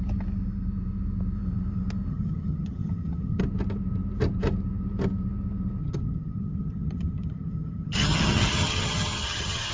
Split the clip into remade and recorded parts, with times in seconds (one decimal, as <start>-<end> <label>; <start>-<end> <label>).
0.0-2.1 recorded; 2.1-3.4 remade; 3.4-5.8 recorded; 5.8-9.7 remade